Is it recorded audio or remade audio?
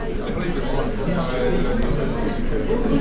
recorded